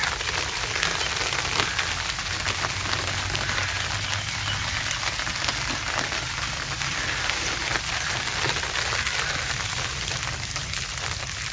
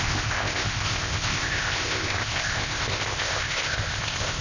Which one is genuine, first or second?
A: first